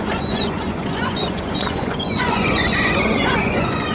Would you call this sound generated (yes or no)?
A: yes